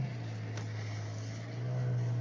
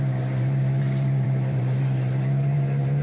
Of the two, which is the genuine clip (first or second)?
first